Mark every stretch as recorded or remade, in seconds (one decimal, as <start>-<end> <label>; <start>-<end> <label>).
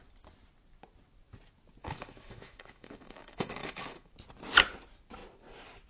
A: 0.0-1.8 recorded; 1.8-4.1 remade; 4.1-5.9 recorded